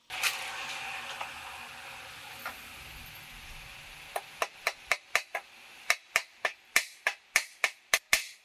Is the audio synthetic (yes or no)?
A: no